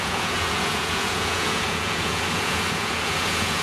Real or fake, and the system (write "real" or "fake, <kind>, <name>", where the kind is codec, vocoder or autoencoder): fake, vocoder, Vocos